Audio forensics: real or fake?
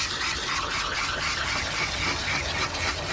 real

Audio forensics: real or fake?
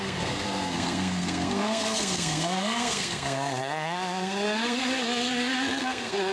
fake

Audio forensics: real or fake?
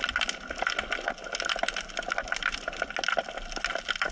real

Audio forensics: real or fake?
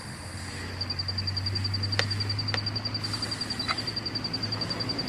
real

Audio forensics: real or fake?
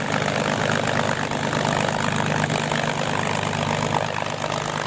real